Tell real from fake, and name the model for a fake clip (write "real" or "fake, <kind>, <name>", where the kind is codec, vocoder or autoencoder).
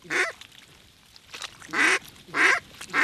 real